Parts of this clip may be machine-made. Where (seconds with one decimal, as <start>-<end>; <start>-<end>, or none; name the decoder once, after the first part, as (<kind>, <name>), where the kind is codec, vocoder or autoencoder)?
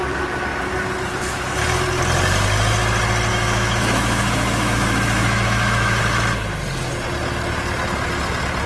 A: 3.3-6.0 (autoencoder, DAC-VAE)